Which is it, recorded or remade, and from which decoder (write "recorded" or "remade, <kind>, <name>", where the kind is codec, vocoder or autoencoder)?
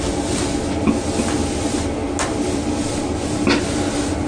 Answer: recorded